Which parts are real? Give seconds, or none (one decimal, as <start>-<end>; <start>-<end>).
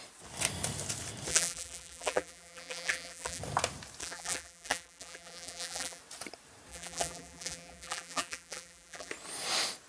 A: 0.0-1.3; 3.4-4.0; 6.0-6.7; 9.1-9.9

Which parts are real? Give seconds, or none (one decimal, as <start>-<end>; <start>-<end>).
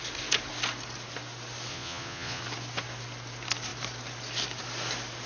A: 0.0-1.7; 2.4-5.3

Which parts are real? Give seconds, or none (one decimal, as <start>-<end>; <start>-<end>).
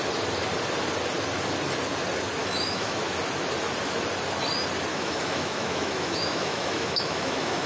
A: 0.0-2.4; 3.0-4.9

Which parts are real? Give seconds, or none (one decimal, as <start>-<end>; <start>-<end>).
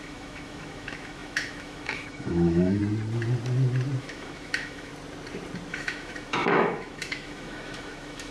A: 2.8-4.0; 4.9-5.7